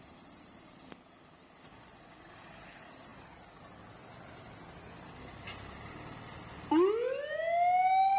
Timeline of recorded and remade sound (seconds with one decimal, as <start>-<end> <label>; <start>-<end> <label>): 0.0-8.2 recorded